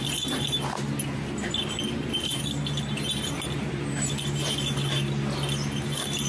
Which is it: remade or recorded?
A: recorded